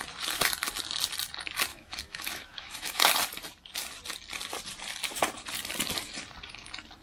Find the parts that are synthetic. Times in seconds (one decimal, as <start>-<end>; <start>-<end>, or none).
1.7-3.1